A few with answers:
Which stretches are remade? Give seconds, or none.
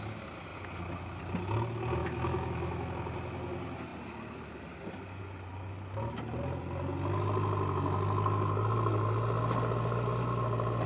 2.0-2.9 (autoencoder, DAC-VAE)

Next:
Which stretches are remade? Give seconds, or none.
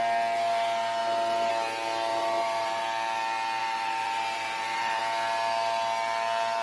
2.1-2.8 (vocoder, BigVGAN v2); 3.6-5.0